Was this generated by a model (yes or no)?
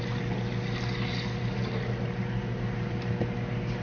no